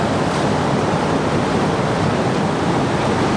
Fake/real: real